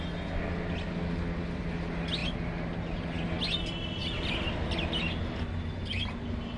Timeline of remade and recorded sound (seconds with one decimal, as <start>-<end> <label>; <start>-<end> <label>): 0.0-6.6 recorded